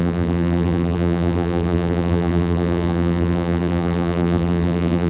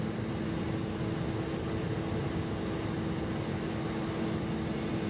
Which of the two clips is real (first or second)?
second